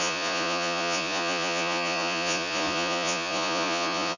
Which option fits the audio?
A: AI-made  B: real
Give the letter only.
A